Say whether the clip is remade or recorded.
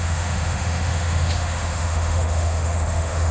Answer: remade